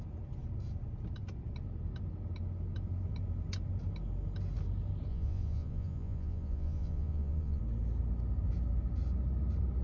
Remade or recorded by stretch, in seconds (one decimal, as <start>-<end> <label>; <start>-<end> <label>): 0.0-5.1 recorded; 5.1-7.6 remade; 7.6-9.8 recorded